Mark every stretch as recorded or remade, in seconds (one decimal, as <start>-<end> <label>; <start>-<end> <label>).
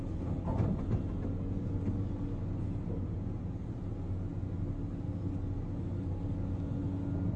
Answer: 0.0-7.4 recorded